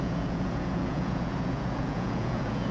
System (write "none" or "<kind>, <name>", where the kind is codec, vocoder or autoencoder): vocoder, Vocos